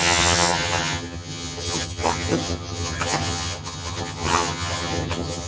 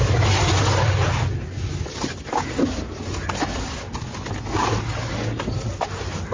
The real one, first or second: second